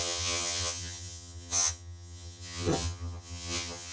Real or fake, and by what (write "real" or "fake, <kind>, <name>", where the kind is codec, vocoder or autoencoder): fake, vocoder, HiFi-GAN